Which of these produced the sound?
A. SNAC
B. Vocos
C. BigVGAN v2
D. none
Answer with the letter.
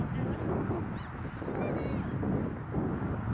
D